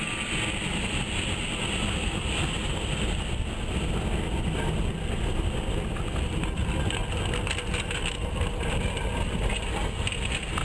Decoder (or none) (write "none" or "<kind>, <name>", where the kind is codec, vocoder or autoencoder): none